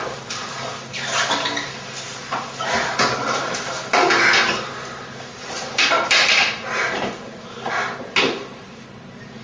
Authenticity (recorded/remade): remade